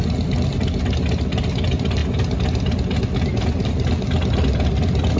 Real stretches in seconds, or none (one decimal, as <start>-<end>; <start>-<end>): 0.0-5.2